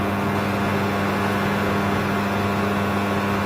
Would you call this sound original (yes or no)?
yes